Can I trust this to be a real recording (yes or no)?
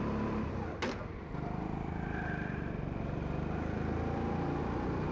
yes